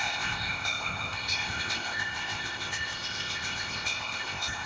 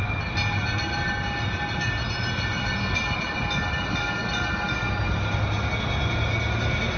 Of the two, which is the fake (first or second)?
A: first